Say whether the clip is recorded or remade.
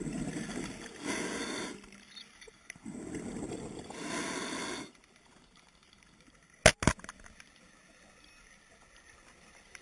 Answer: recorded